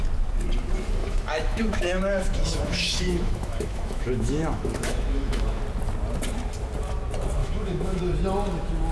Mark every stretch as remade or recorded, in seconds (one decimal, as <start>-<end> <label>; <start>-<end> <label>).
0.0-1.0 recorded; 1.0-5.6 remade; 5.6-7.4 recorded; 7.4-8.0 remade; 8.0-8.9 recorded

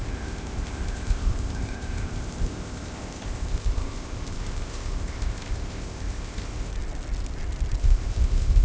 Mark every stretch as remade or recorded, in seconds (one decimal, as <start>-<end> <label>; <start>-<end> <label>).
0.0-6.7 remade; 6.7-7.8 recorded; 7.8-8.6 remade

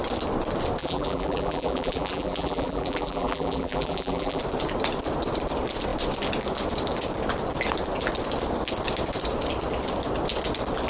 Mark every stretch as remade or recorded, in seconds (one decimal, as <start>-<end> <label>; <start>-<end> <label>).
0.0-0.8 recorded; 0.8-4.4 remade; 4.4-10.9 recorded